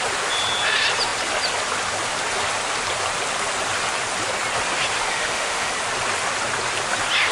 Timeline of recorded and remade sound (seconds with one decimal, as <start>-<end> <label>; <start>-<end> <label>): 0.0-5.1 recorded; 5.1-5.7 remade; 5.7-7.3 recorded